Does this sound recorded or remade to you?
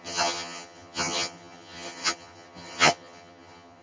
remade